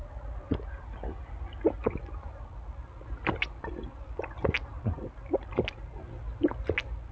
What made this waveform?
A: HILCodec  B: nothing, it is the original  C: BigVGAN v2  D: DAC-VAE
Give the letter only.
B